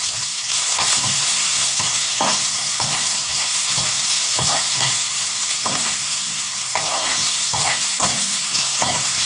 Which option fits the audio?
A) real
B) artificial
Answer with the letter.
B